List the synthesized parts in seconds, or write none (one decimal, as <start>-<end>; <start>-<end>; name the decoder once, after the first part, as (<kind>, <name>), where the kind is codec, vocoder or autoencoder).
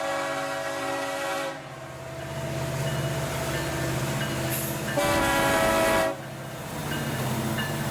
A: none